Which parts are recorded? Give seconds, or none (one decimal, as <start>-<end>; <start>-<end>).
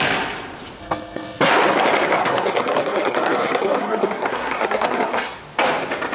0.0-0.8; 1.5-2.2; 5.4-6.1